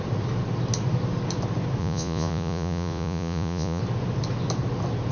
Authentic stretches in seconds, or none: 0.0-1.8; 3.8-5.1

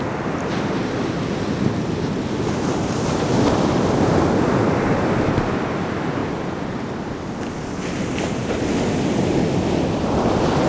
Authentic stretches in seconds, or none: 0.0-10.7

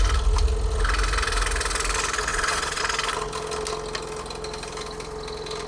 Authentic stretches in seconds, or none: 0.0-2.3; 2.8-5.7

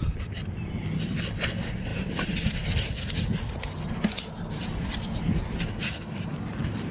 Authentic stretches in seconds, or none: 0.0-6.9

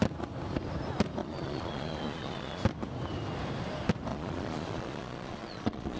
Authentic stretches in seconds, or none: 0.0-1.2; 2.6-4.1

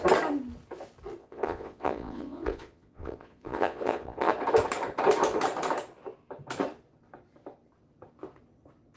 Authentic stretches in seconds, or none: 0.0-1.2; 4.3-9.0

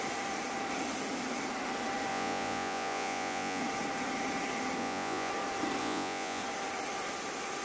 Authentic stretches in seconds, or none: 0.0-2.1; 3.6-4.8; 5.3-5.8; 6.4-7.6

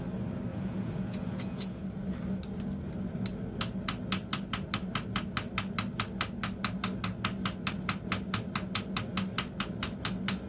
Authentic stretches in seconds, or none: 0.0-0.5; 1.8-10.5